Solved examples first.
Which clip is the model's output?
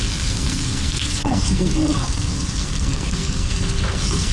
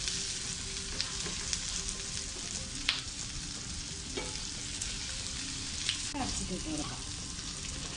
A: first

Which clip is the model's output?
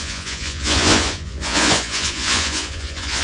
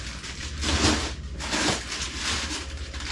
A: first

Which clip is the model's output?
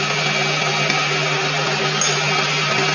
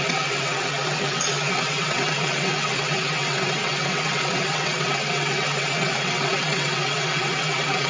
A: second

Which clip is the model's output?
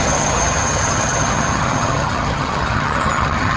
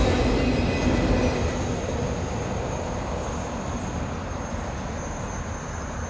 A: first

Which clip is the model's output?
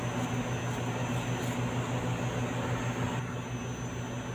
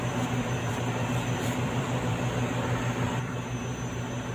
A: second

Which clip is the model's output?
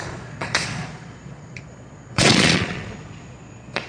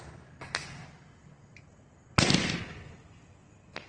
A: first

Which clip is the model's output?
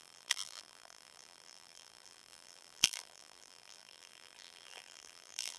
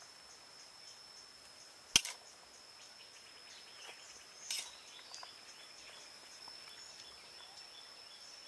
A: first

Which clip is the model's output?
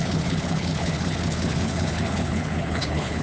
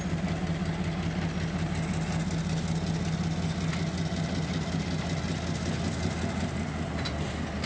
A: first